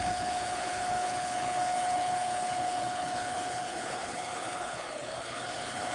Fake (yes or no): yes